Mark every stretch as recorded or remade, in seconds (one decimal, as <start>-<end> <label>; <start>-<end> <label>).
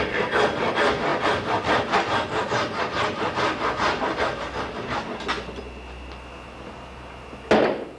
0.0-8.0 recorded